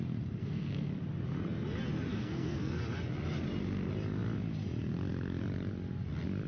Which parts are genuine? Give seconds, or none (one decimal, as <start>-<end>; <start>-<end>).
0.0-0.4; 0.9-2.1; 2.8-6.5

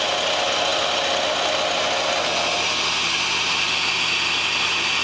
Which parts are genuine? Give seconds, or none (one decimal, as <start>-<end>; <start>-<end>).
0.0-5.0

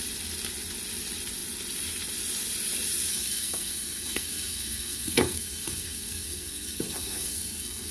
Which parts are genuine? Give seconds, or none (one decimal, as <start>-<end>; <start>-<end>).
0.0-3.1

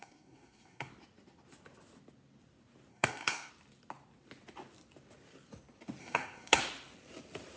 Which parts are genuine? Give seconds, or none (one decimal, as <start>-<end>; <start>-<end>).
0.9-2.9; 3.5-6.0; 6.6-7.6

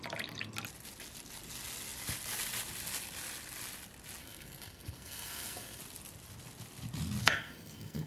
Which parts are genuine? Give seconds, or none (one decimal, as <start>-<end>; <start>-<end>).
0.0-4.2; 5.8-7.2

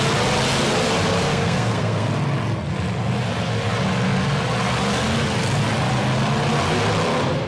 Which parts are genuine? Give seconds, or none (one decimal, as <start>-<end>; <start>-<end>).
0.0-1.3; 2.1-7.5